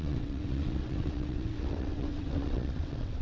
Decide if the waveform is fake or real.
fake